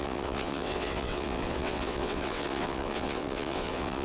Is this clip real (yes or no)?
no